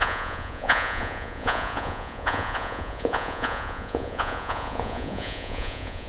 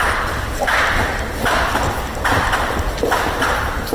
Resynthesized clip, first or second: first